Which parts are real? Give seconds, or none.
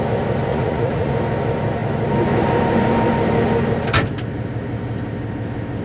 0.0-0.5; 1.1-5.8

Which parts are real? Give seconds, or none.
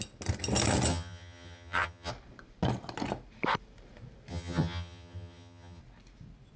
0.0-0.9; 2.1-4.3; 5.8-6.6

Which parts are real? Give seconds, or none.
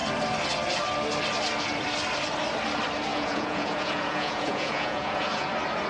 0.0-3.1; 5.5-5.9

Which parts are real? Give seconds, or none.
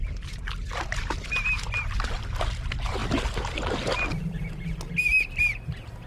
0.0-6.1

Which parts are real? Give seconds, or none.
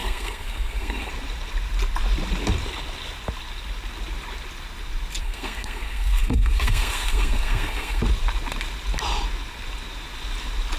1.1-5.2; 8.0-10.8